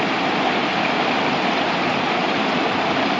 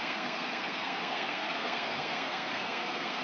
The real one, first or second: first